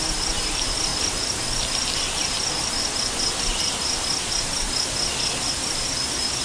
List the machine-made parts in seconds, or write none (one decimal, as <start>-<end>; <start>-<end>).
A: none